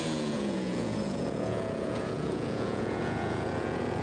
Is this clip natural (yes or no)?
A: no